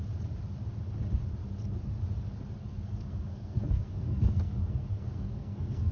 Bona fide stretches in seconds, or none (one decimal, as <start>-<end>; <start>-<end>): 0.0-2.6